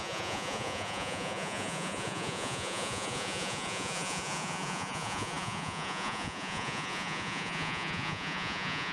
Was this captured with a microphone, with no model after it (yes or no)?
no